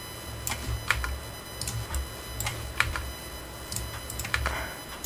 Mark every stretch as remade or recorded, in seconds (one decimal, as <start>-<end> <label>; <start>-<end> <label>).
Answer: 0.0-2.5 recorded; 2.5-4.3 remade; 4.3-5.1 recorded